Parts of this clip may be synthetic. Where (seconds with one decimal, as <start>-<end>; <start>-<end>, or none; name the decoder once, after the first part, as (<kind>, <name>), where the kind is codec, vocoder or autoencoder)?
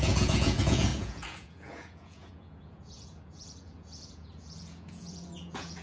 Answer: 0.0-5.8 (vocoder, Vocos)